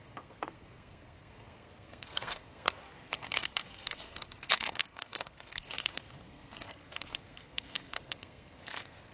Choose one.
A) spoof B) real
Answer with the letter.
A